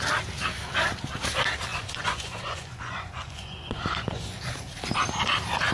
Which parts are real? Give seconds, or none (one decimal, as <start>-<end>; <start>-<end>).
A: 0.0-1.7; 4.4-5.7